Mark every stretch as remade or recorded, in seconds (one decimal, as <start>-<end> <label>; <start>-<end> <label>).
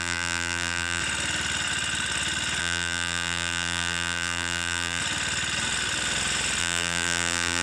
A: 0.0-1.0 remade; 1.0-2.6 recorded; 2.6-5.0 remade; 5.0-6.6 recorded; 6.6-7.6 remade